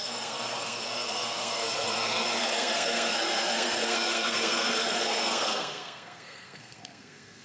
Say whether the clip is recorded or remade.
remade